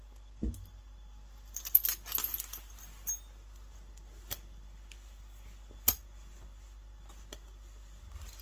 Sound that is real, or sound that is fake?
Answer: real